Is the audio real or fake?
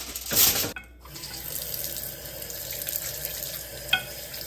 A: real